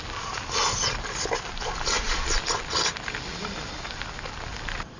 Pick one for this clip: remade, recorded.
recorded